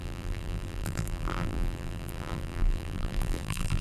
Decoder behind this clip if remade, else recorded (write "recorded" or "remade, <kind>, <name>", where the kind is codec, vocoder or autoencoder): remade, vocoder, BigVGAN v2